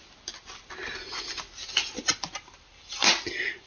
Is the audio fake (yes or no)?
no